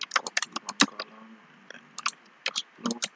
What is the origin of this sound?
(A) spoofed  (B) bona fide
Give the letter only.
B